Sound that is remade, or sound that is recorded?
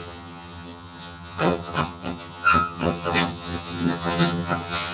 remade